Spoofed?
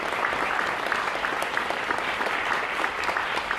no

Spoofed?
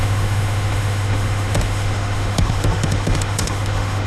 yes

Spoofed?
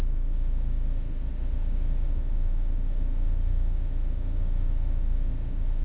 yes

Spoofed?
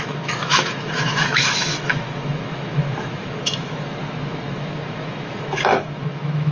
yes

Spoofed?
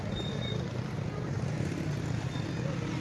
no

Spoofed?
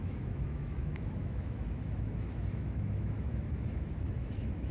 yes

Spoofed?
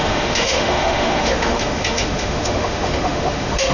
yes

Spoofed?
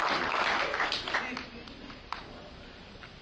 no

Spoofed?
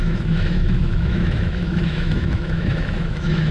yes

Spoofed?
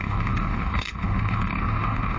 yes